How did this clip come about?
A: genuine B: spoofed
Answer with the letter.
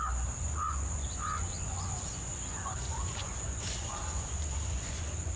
B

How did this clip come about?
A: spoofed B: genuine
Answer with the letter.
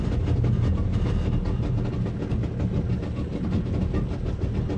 B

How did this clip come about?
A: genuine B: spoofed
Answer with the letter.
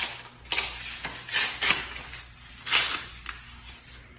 A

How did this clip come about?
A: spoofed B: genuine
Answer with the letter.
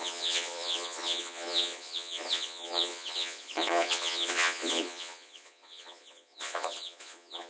A